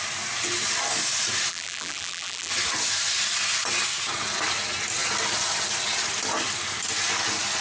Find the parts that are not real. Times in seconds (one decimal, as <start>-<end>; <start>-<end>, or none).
1.5-2.5